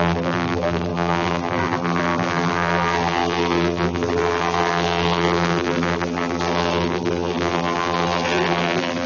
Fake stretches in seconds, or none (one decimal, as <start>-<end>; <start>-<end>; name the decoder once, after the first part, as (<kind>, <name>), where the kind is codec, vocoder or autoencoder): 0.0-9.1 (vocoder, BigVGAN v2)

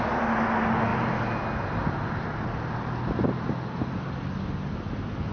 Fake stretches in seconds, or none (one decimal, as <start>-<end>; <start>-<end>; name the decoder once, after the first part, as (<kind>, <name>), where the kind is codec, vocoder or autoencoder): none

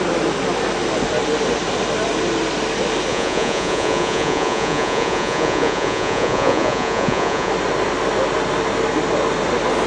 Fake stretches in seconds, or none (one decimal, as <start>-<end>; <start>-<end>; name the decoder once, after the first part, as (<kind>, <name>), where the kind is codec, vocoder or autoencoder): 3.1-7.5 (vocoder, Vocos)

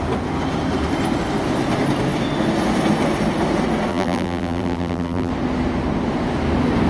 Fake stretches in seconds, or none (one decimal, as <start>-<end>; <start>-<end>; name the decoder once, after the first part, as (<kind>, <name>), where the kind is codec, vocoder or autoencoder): 3.9-5.3 (vocoder, BigVGAN v2)

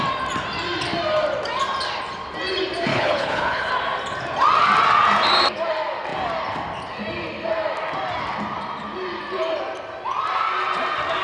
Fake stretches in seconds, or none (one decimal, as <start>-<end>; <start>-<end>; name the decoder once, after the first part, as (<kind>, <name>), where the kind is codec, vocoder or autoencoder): 2.9-3.7 (codec, HILCodec)